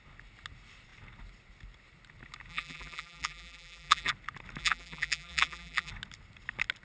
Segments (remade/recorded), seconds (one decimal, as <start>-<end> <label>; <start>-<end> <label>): 0.0-2.5 recorded; 2.5-4.1 remade; 4.1-4.6 recorded; 4.6-5.9 remade; 5.9-6.8 recorded